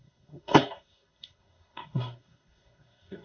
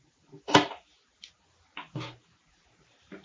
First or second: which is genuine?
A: second